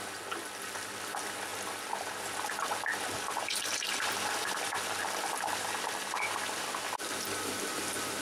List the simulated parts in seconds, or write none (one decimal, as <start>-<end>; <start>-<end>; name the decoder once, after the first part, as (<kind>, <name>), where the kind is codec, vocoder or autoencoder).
1.5-5.0 (vocoder, BigVGAN v2)